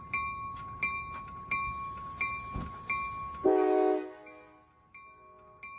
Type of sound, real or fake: real